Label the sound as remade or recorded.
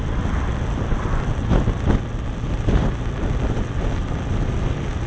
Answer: recorded